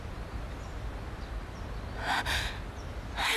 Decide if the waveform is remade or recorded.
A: recorded